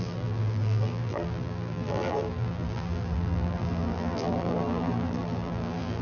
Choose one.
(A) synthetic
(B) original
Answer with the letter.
A